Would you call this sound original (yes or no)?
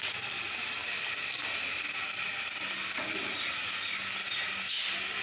no